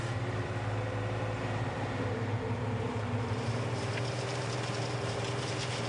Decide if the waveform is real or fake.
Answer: fake